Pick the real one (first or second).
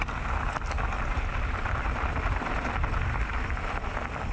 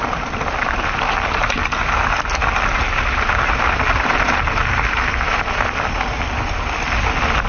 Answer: second